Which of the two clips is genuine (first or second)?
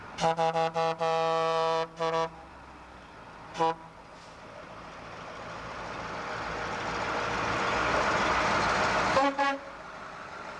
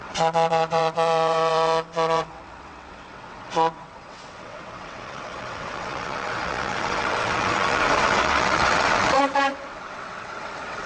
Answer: first